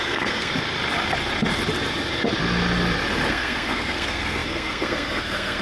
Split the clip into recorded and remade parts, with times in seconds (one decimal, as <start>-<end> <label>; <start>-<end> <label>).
0.0-0.5 remade; 0.5-3.3 recorded; 3.3-5.6 remade